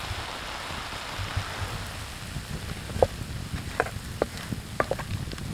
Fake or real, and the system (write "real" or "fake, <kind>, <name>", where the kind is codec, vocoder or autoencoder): real